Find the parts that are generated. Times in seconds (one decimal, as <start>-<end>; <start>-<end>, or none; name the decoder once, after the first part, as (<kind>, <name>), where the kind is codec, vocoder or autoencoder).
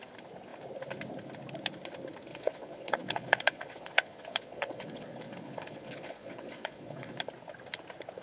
2.3-7.2 (vocoder, Vocos)